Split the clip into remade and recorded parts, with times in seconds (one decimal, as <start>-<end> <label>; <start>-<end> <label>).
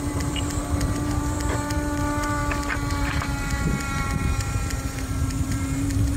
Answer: 0.0-2.4 remade; 2.4-2.9 recorded; 2.9-6.2 remade